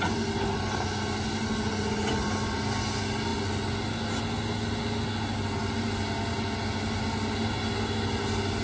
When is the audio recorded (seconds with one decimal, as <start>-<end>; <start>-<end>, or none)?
0.0-8.6